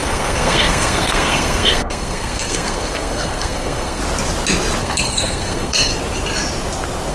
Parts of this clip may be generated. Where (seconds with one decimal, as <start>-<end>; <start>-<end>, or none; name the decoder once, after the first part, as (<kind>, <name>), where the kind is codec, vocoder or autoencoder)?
0.0-4.0 (codec, SNAC); 4.8-5.9